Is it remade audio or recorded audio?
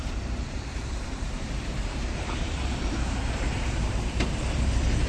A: remade